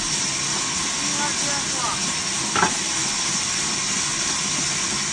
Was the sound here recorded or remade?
recorded